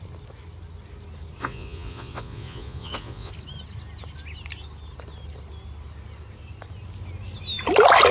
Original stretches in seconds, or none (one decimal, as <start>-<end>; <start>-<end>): 0.0-1.4; 3.3-8.1